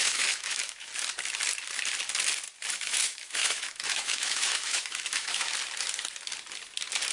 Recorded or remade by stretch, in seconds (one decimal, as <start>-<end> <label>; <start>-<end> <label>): 0.0-0.9 remade; 0.9-2.7 recorded; 2.7-5.5 remade; 5.5-7.1 recorded